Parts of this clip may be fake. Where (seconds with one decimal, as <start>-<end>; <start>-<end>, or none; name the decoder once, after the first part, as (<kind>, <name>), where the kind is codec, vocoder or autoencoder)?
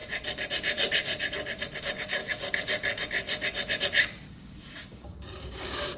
1.8-2.2 (codec, DAC); 4.3-6.0